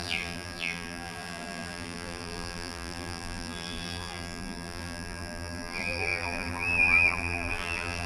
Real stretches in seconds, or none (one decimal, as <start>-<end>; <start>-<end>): none